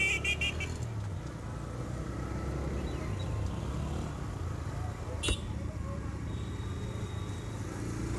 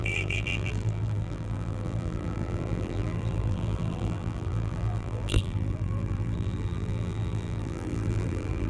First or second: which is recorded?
first